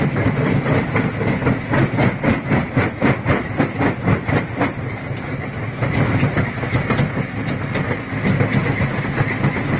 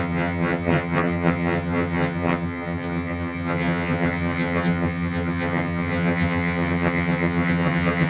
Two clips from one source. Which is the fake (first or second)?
second